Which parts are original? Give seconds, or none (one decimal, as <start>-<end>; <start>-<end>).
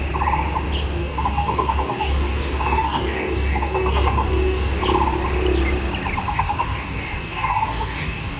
0.0-1.0; 4.8-6.3